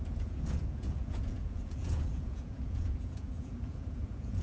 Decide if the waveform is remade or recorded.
remade